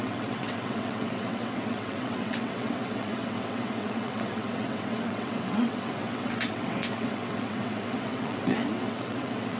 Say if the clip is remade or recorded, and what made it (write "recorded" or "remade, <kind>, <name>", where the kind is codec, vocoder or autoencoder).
remade, vocoder, WaveNeXt